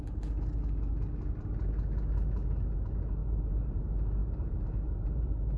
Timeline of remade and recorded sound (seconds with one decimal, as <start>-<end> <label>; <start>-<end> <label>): 0.0-3.2 recorded; 3.2-3.8 remade; 3.8-4.2 recorded; 4.2-5.6 remade